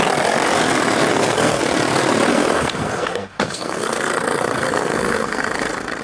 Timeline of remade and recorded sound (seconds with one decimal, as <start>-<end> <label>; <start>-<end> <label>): 0.0-1.1 recorded; 1.1-1.6 remade; 1.6-2.3 recorded; 2.3-6.0 remade